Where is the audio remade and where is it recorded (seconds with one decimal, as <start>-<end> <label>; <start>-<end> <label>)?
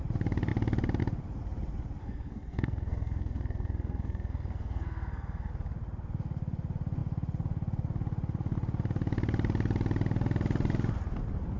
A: 0.0-2.0 recorded; 2.0-5.5 remade; 5.5-11.6 recorded